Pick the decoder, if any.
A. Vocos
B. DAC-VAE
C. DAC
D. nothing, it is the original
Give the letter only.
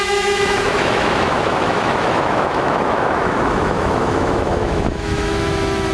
B